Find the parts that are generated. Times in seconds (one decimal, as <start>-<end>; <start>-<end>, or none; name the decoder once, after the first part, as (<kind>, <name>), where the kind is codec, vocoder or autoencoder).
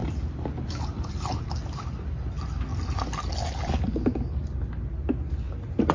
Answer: none